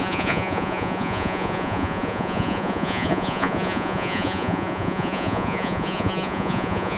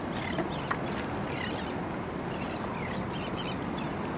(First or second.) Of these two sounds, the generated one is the first